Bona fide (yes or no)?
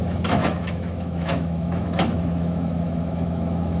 no